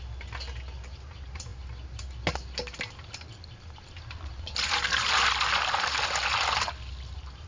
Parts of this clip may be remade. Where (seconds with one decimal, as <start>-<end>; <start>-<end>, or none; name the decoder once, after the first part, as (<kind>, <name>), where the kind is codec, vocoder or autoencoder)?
none